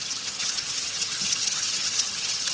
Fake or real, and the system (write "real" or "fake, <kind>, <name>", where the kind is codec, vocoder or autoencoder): fake, vocoder, HiFi-GAN